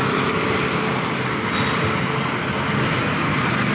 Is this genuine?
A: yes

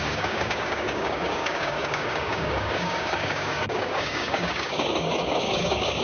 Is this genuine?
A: no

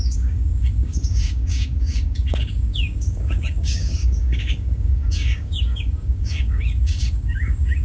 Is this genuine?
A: no